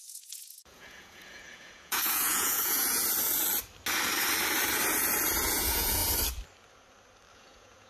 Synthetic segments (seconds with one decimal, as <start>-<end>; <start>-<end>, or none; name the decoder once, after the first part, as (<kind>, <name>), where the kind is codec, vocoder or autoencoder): 0.0-3.0 (vocoder, Vocos); 5.4-6.0; 7.3-7.9